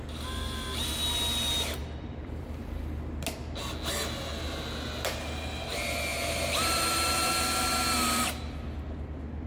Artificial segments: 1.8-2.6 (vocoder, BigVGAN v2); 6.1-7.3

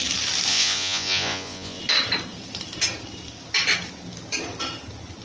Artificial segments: 0.5-1.8 (vocoder, Vocos)

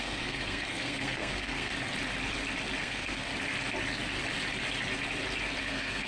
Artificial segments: 0.0-1.7 (codec, SNAC); 2.8-3.3; 5.6-6.1

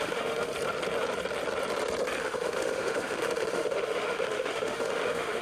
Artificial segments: 0.0-0.5 (autoencoder, DAC-VAE); 2.2-5.4